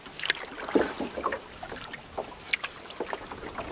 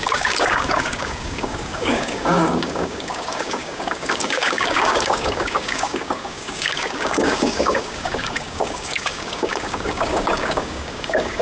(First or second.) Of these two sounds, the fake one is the second